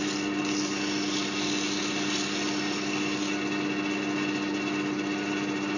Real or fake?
real